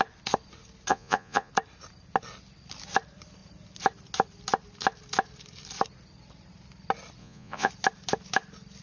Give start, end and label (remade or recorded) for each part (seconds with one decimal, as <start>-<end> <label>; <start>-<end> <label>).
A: 0.0-0.9 recorded; 0.9-1.5 remade; 1.5-7.2 recorded; 7.2-7.7 remade; 7.7-8.8 recorded